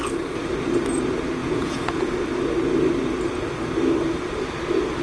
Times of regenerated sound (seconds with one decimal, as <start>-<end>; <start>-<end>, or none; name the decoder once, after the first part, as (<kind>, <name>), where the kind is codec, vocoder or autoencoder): 1.4-2.1 (vocoder, Vocos)